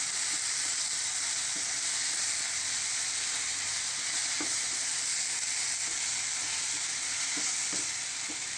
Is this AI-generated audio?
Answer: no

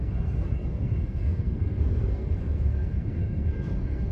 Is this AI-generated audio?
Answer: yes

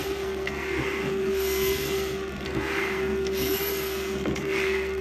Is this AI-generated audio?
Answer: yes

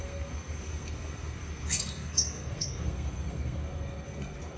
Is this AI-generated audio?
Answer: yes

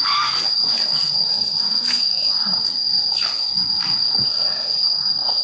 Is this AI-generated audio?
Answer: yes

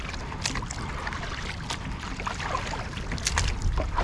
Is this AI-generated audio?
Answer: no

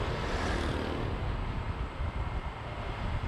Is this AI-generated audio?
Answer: no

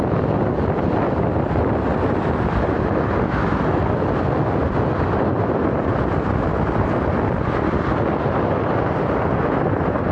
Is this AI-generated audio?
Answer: no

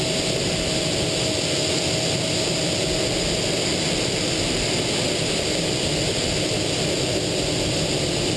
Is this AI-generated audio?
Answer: no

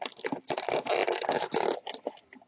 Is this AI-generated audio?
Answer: no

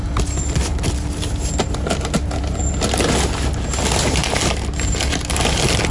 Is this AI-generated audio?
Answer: no